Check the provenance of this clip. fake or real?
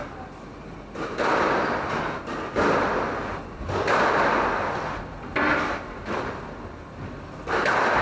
real